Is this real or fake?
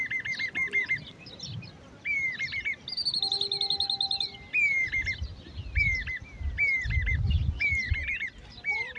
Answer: real